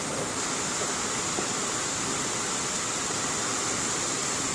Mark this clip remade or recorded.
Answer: recorded